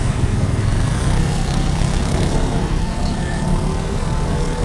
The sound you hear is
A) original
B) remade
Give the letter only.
B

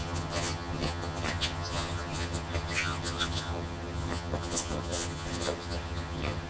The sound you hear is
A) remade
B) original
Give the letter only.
A